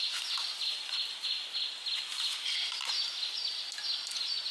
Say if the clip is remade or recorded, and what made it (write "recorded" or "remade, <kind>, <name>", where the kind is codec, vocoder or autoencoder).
recorded